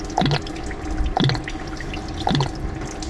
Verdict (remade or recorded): recorded